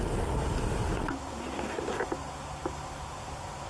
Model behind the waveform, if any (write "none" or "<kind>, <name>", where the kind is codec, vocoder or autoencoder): none